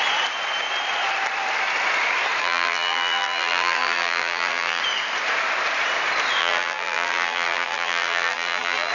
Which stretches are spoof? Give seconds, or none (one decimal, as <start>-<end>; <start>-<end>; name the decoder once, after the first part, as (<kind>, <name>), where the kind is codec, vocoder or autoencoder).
2.4-4.8 (vocoder, BigVGAN v2); 6.4-8.9